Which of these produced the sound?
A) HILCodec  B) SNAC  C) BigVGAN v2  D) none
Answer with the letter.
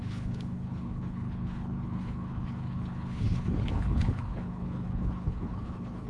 A